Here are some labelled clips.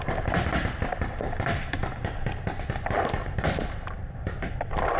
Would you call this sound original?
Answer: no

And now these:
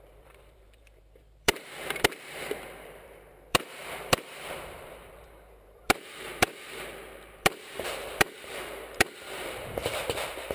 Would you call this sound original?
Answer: no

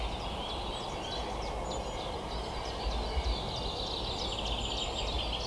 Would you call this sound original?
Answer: yes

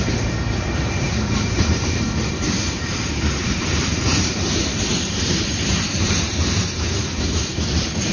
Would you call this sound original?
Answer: no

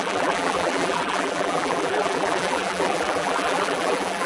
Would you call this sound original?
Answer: no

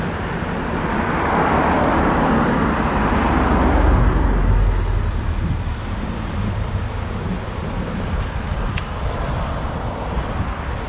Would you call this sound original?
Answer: no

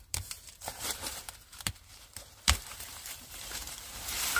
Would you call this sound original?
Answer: no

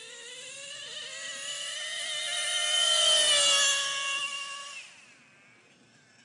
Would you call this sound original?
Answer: yes